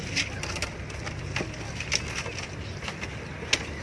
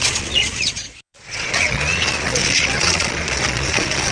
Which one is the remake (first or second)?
second